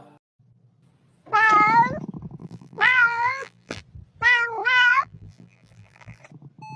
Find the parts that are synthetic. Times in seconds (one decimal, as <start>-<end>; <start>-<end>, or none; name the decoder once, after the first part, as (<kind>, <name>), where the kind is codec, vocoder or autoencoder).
2.4-3.8 (vocoder, BigVGAN v2); 4.9-6.2

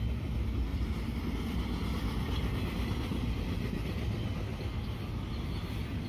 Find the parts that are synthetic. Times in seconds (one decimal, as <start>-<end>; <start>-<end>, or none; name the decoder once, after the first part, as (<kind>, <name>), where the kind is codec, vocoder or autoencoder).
0.7-1.2 (vocoder, BigVGAN v2)